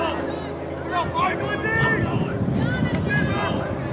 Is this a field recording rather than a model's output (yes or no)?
yes